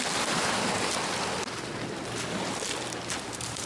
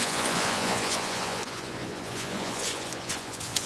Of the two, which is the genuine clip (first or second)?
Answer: first